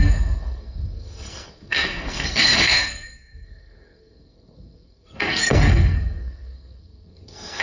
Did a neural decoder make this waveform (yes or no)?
yes